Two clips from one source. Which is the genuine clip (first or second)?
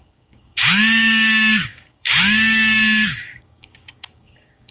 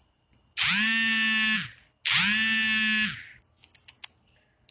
second